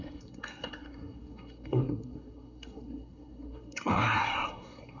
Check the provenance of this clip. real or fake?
fake